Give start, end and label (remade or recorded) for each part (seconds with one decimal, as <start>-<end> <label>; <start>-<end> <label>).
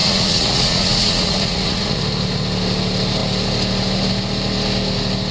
0.0-2.0 remade; 2.0-5.3 recorded